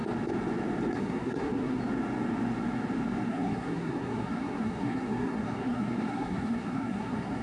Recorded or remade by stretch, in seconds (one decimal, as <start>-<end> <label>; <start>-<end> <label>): 0.0-0.9 recorded; 0.9-1.8 remade; 1.8-3.3 recorded; 3.3-7.4 remade